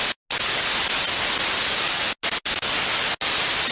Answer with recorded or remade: recorded